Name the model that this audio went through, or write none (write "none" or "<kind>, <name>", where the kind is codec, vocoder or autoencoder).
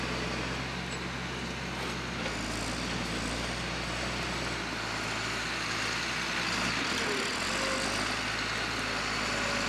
none